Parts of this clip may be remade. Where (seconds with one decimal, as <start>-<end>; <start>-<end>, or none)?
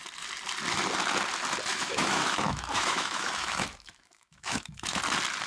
1.7-5.0